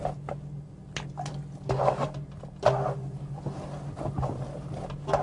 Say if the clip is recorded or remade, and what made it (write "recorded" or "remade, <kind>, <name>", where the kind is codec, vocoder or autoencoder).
recorded